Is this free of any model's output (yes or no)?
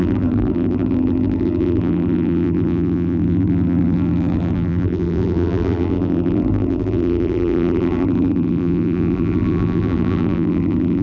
no